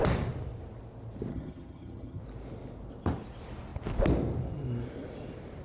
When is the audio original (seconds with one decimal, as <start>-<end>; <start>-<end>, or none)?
0.0-1.3; 2.2-5.6